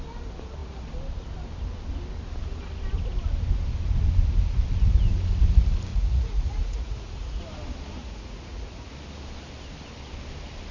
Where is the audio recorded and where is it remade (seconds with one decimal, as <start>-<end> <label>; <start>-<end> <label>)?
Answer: 0.0-5.9 recorded; 5.9-7.4 remade; 7.4-8.0 recorded; 8.0-8.9 remade; 8.9-10.7 recorded